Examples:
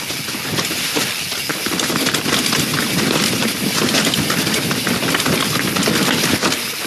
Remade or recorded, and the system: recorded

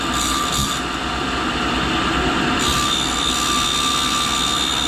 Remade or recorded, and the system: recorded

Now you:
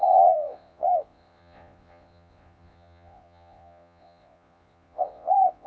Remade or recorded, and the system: remade, vocoder, Vocos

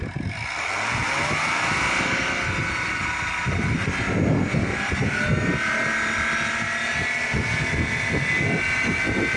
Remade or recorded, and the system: recorded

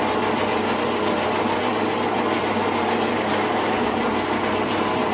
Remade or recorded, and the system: remade, vocoder, BigVGAN v2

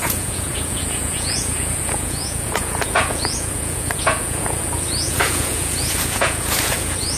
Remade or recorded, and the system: remade, vocoder, Vocos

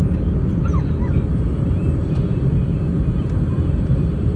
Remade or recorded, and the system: recorded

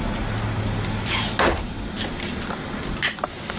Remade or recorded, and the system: recorded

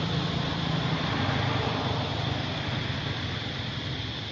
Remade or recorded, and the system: remade, vocoder, BigVGAN v2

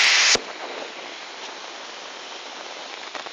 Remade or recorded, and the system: recorded